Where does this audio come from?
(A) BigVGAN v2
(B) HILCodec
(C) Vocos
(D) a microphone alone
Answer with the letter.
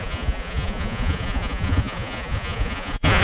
C